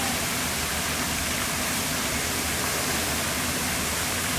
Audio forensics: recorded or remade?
remade